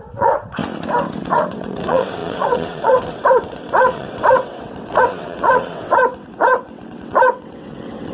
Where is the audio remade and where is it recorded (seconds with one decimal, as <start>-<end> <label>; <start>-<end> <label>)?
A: 0.0-0.6 remade; 0.6-1.2 recorded; 1.2-8.1 remade